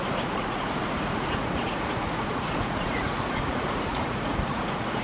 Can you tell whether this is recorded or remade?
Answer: remade